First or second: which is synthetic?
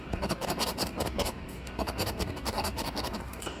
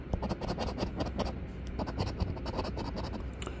first